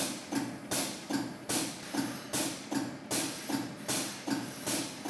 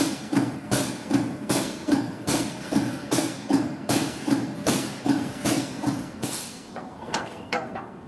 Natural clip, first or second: first